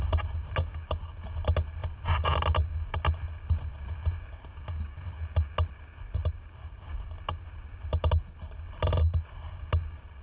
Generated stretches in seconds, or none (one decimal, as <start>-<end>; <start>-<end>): none